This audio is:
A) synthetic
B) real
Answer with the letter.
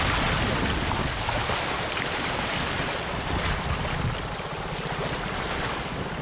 B